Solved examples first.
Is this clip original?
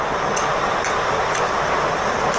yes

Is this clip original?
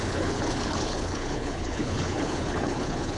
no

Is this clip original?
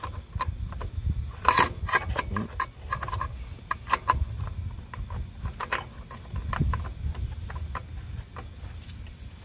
yes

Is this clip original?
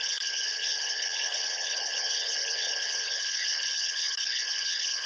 no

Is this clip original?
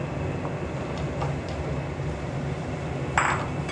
yes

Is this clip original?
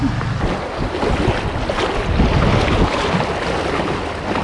yes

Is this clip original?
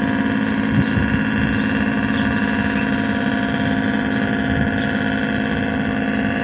yes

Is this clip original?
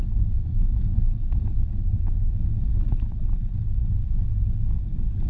yes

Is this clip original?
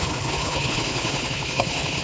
no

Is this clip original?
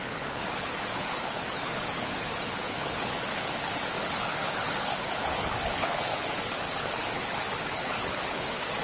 no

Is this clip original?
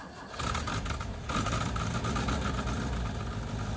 yes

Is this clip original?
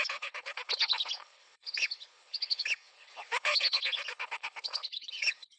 no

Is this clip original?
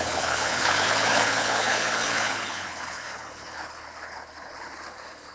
no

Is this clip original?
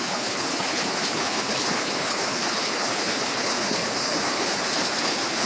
no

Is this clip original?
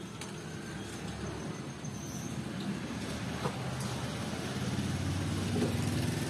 yes